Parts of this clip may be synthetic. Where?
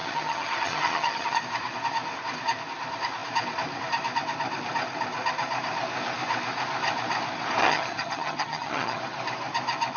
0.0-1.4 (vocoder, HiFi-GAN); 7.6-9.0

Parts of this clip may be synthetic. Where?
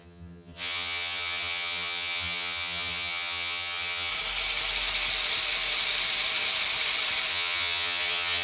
0.0-4.1 (vocoder, HiFi-GAN); 7.3-8.4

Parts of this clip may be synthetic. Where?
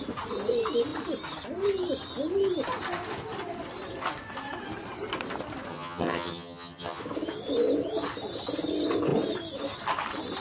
5.7-7.0 (vocoder, HiFi-GAN)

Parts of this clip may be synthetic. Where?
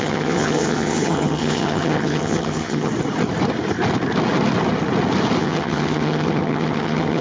0.0-2.9 (vocoder, HiFi-GAN); 5.4-7.2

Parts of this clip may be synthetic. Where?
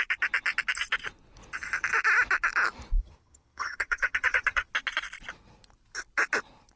3.0-4.7 (vocoder, HiFi-GAN)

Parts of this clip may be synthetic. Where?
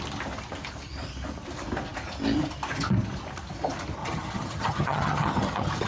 4.0-5.9 (vocoder, HiFi-GAN)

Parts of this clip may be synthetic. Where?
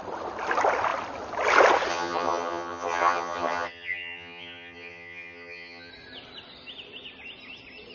1.9-5.9 (vocoder, HiFi-GAN)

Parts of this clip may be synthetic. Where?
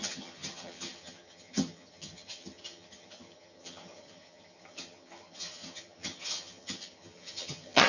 0.0-7.9 (vocoder, HiFi-GAN)